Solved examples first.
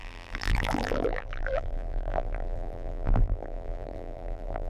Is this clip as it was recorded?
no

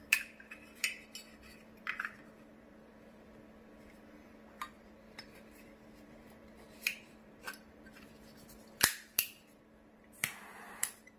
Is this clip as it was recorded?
no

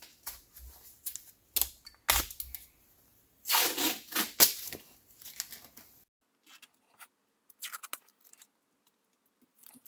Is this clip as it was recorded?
yes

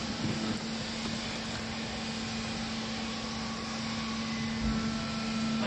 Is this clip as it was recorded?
yes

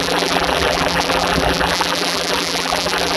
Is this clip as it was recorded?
no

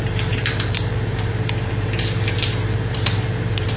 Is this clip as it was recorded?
no